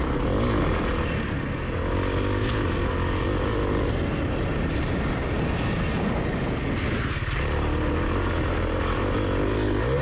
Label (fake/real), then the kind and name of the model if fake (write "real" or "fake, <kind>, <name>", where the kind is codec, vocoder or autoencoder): real